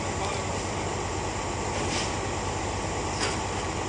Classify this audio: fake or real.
real